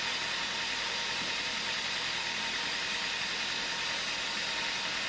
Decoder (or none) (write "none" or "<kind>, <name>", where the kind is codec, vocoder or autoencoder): none